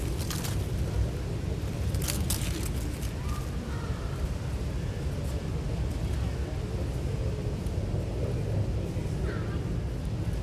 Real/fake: real